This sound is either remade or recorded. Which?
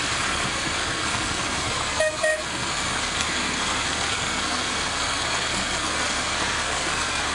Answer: remade